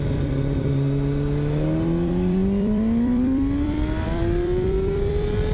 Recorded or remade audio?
remade